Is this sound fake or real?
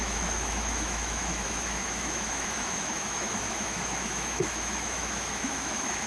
fake